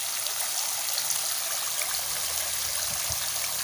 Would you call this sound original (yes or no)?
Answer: yes